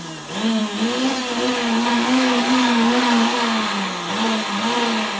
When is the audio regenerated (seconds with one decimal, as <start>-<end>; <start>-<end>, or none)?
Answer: 1.9-3.7